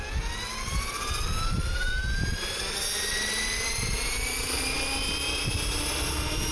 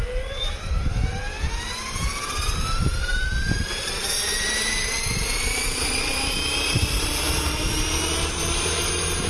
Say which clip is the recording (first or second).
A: first